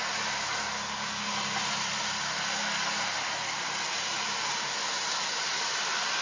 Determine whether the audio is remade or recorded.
recorded